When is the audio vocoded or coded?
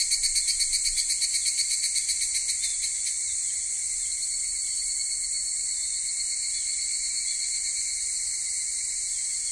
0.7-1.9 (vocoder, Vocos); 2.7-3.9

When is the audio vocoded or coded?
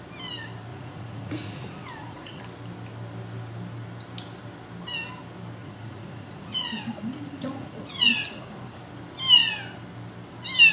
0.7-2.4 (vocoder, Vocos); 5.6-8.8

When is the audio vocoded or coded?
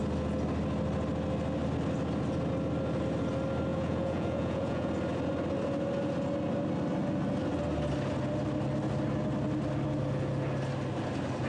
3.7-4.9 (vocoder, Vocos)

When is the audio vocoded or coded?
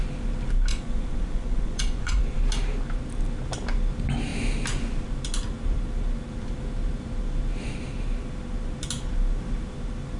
0.7-2.2 (vocoder, Vocos)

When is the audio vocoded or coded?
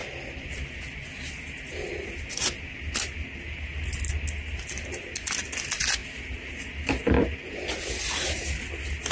none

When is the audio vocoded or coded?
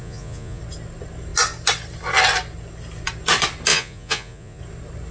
0.0-0.6 (vocoder, Vocos); 3.7-4.6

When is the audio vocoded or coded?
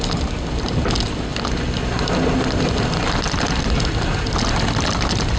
none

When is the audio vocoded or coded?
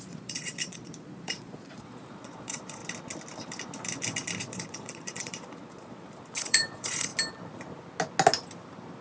0.0-2.8 (vocoder, Vocos); 4.4-7.1